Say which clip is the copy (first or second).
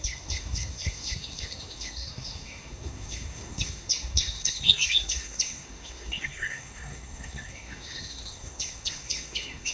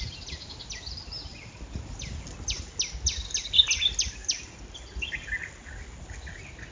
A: first